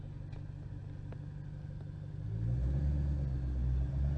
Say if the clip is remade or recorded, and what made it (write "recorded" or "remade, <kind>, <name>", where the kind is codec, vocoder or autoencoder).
recorded